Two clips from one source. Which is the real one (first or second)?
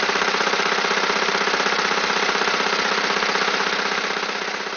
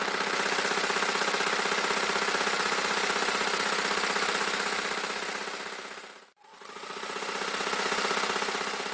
second